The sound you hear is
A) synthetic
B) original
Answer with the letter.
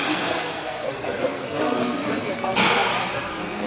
A